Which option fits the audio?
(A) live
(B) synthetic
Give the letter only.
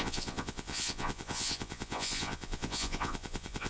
B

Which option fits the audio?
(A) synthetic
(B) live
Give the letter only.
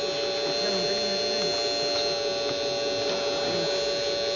B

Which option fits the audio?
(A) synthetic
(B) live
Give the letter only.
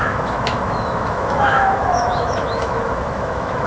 A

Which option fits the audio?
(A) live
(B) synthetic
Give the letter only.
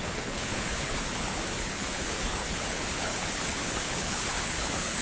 B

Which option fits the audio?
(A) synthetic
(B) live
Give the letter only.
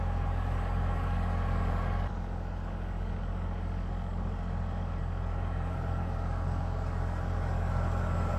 A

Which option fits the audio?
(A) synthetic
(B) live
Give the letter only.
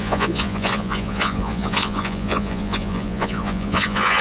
A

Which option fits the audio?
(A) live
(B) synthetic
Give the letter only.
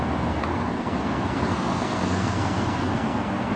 B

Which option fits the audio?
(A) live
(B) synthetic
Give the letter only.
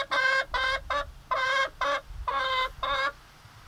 A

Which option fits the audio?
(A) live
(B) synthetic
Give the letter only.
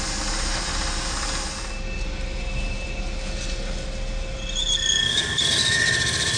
A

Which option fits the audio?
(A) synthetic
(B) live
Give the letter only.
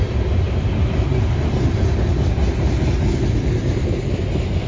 B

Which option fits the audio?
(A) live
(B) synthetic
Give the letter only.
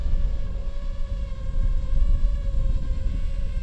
A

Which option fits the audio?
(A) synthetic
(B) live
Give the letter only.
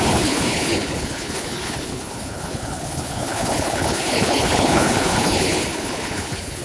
A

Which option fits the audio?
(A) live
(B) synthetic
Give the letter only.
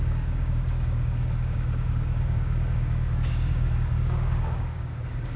B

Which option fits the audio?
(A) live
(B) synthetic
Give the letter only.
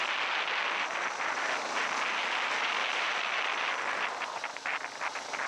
A